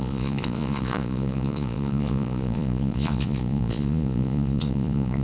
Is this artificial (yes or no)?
yes